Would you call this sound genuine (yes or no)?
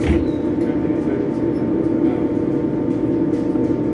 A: yes